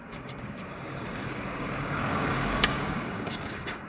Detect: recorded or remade remade